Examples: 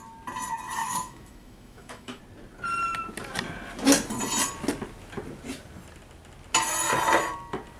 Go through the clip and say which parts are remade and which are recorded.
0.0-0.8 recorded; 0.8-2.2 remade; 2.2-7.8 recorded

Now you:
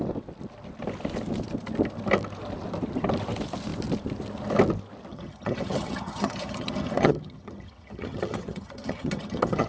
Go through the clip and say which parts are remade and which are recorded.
0.0-5.1 recorded; 5.1-9.7 remade

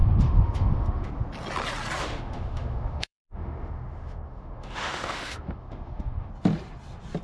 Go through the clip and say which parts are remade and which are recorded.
0.0-1.1 remade; 1.1-2.0 recorded; 2.0-6.3 remade; 6.3-7.2 recorded

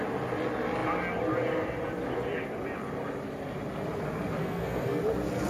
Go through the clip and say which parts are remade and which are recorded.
0.0-4.4 recorded; 4.4-5.0 remade; 5.0-5.5 recorded

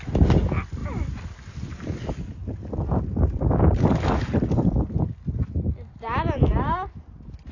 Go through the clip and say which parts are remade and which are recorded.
0.0-7.5 recorded